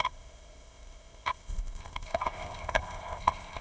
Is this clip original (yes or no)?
no